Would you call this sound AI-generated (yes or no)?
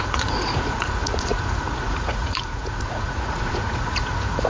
yes